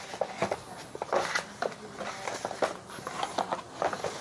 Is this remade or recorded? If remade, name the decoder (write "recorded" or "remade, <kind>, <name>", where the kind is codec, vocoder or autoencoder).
recorded